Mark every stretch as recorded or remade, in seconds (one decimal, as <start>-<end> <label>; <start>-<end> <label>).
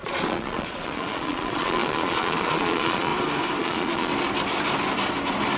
0.0-3.1 remade; 3.1-3.6 recorded; 3.6-4.1 remade; 4.1-5.6 recorded